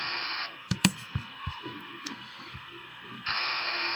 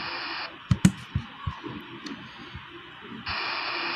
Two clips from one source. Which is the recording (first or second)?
second